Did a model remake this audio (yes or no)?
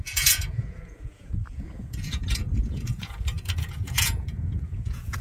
yes